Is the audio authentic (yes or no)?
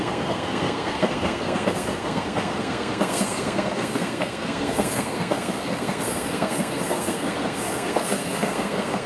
no